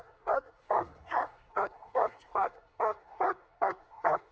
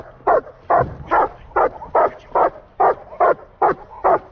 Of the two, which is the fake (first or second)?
first